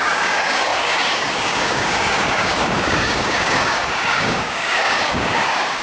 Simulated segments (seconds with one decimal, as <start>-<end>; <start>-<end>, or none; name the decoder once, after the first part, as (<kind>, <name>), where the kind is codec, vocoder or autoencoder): 0.0-5.8 (codec, DAC)